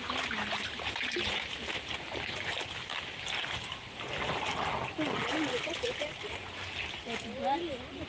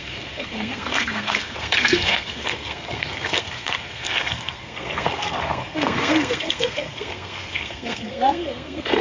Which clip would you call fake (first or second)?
second